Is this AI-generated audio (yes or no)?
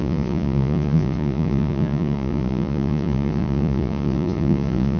yes